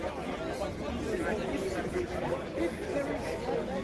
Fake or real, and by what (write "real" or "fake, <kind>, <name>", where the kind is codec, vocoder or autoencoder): real